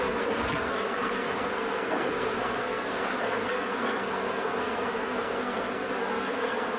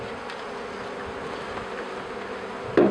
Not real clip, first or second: first